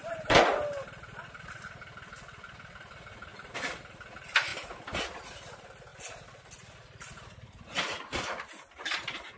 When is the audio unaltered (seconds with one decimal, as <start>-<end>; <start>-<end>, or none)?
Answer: 0.0-9.4